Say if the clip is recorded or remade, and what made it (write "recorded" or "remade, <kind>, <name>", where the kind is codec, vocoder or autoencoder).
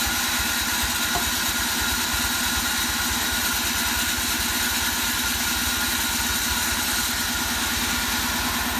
recorded